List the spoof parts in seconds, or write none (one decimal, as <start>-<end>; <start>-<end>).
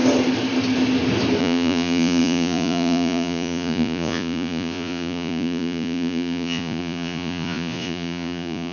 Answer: 1.4-8.7